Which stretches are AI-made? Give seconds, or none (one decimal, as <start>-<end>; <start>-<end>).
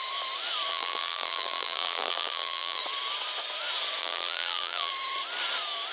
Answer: 0.7-2.8; 4.0-4.9